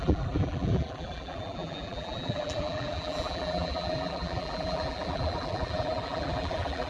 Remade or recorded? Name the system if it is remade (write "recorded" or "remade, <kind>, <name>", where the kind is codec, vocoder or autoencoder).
remade, vocoder, BigVGAN v2